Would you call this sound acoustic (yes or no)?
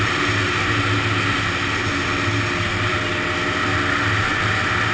yes